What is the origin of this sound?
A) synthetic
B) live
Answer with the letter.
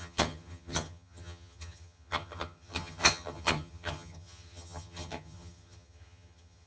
A